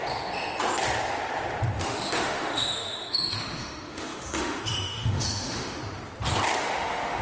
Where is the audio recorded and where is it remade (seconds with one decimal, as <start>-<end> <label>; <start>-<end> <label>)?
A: 0.0-1.8 recorded; 1.8-5.8 remade; 5.8-6.6 recorded; 6.6-7.2 remade

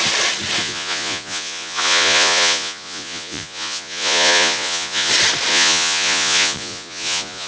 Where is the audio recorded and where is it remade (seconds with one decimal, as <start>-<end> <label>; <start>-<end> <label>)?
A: 0.0-0.6 recorded; 0.6-5.1 remade; 5.1-5.5 recorded; 5.5-7.5 remade

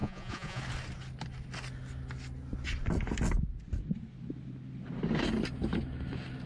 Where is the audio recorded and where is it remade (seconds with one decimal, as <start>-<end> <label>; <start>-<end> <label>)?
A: 0.0-0.6 remade; 0.6-6.5 recorded

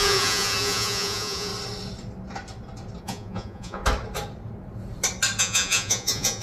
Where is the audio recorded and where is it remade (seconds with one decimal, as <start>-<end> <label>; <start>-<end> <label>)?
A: 0.0-1.5 remade; 1.5-3.0 recorded; 3.0-3.8 remade; 3.8-5.4 recorded; 5.4-6.4 remade

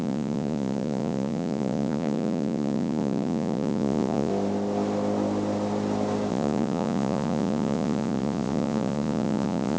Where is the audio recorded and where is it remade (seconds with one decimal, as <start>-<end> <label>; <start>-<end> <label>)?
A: 0.0-4.3 remade; 4.3-6.3 recorded; 6.3-9.8 remade